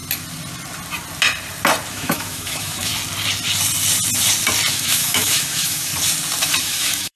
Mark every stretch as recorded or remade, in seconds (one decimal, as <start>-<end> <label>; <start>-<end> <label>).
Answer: 0.0-1.9 recorded; 1.9-2.9 remade; 2.9-4.7 recorded; 4.7-5.9 remade; 5.9-6.6 recorded; 6.6-7.2 remade